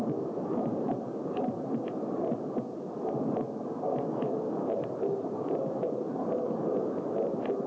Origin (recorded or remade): recorded